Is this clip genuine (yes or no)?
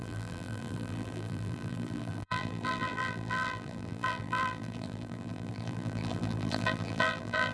no